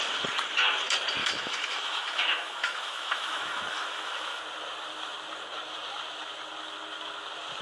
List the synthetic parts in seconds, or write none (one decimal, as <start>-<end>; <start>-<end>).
1.2-4.4